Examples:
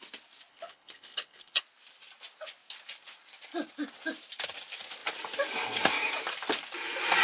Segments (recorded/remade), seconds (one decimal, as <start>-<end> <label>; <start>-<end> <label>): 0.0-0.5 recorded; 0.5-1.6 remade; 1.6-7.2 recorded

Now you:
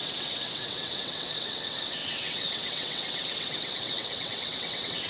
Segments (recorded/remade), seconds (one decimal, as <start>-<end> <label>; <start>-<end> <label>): 0.0-5.1 remade

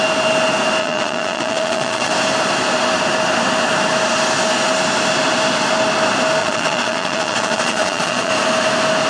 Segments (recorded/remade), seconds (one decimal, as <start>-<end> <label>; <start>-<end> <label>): 0.0-0.8 recorded; 0.8-2.1 remade; 2.1-6.4 recorded; 6.4-8.3 remade; 8.3-9.1 recorded

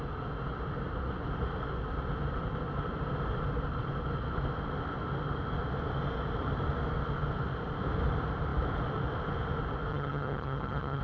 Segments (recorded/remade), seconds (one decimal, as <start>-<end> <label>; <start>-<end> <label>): 0.0-9.9 recorded; 9.9-11.0 remade

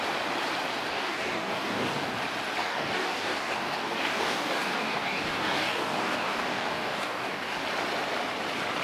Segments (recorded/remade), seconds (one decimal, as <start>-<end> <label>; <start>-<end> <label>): 0.0-0.9 recorded; 0.9-2.1 remade; 2.1-2.6 recorded; 2.6-7.6 remade; 7.6-8.8 recorded

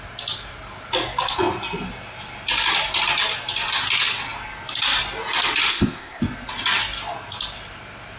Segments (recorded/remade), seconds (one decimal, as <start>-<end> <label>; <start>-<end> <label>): 0.0-5.7 recorded; 5.7-6.2 remade; 6.2-8.2 recorded

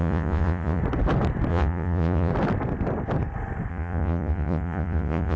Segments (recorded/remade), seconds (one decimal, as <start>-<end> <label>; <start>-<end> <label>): 0.0-0.8 remade; 0.8-1.5 recorded; 1.5-2.3 remade; 2.3-3.7 recorded; 3.7-5.4 remade